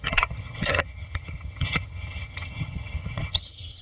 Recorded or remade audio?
remade